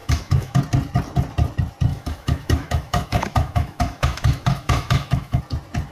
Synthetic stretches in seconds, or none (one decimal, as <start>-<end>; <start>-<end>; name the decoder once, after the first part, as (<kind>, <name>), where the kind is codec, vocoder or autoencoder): 0.0-0.6 (autoencoder, DAC-VAE); 1.9-5.4